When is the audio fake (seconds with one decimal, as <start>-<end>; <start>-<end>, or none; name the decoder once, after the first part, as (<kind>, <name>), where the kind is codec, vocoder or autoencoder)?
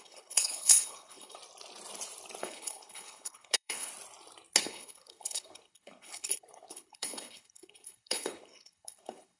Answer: 0.0-1.4 (codec, HILCodec); 2.4-3.9; 4.6-9.4